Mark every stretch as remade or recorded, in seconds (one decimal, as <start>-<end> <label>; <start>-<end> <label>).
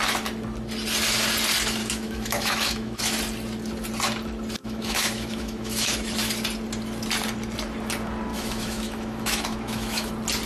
0.0-1.8 recorded; 1.8-3.2 remade; 3.2-4.6 recorded; 4.6-6.3 remade; 6.3-8.3 recorded; 8.3-10.1 remade; 10.1-10.5 recorded